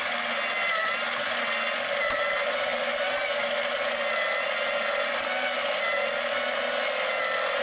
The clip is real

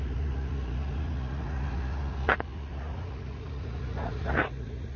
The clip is fake